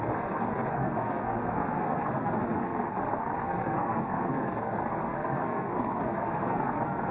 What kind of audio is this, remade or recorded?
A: remade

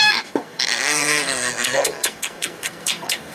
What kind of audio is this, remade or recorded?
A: remade